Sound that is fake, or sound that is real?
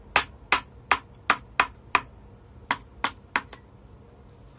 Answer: real